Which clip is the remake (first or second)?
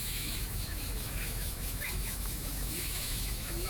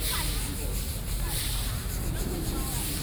first